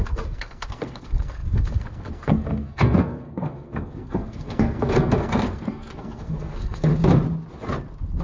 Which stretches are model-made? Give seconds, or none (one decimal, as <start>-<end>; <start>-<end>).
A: 0.0-6.9